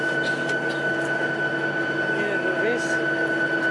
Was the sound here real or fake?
real